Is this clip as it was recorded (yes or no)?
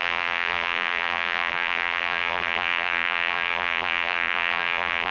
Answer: no